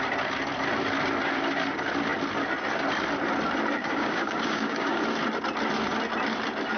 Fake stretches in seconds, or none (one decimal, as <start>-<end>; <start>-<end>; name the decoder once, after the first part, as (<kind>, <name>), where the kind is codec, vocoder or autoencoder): 3.8-5.0 (codec, DAC)